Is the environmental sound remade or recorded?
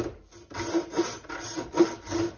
recorded